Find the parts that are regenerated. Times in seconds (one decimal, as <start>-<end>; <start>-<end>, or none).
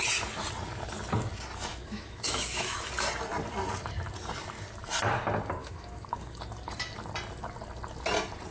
1.7-2.9; 5.6-6.4